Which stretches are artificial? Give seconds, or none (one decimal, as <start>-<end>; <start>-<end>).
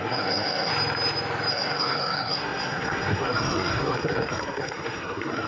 0.0-0.7; 1.5-5.5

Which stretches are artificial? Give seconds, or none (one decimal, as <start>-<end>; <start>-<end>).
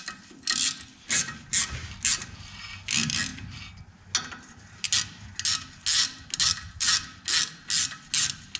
none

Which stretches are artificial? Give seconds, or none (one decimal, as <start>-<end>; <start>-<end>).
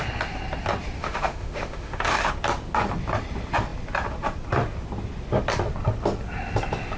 1.0-2.3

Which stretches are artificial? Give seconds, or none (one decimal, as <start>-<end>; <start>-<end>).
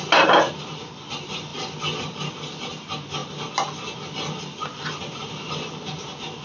none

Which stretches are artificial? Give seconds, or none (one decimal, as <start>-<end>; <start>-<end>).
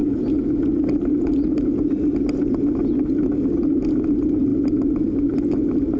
none